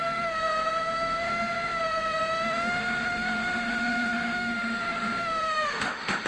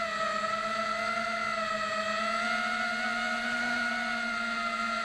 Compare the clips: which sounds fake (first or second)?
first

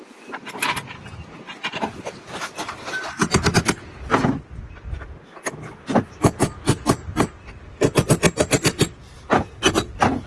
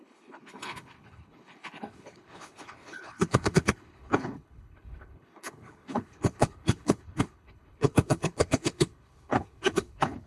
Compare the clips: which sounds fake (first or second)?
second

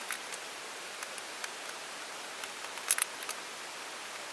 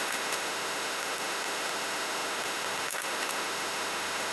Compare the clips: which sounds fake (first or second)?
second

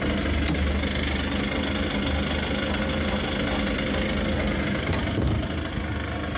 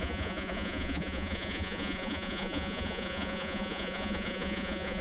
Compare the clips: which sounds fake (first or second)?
second